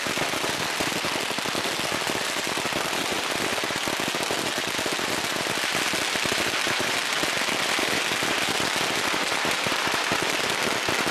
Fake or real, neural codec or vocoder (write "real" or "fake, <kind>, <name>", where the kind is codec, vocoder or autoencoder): fake, vocoder, BigVGAN v2